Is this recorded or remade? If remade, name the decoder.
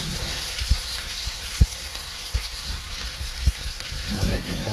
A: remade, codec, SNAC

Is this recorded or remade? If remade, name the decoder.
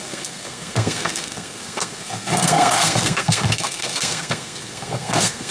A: remade, codec, SNAC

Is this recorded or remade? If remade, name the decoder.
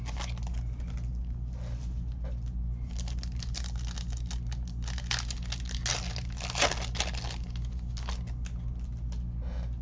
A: recorded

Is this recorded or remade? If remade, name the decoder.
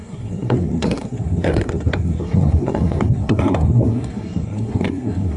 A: remade, codec, SNAC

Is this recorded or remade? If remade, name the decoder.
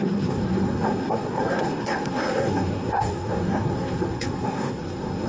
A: remade, codec, SNAC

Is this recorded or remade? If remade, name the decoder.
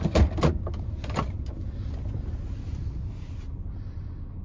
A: recorded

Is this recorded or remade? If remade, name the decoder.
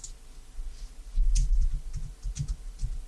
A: recorded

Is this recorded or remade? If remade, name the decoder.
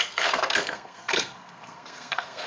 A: remade, codec, SNAC